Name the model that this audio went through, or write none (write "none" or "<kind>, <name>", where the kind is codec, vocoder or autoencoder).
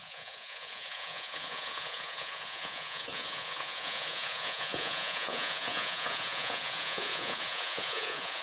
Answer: vocoder, Vocos